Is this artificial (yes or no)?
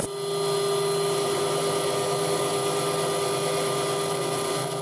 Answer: no